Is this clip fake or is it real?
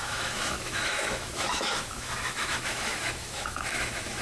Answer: fake